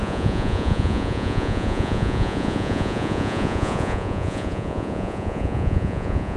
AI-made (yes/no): yes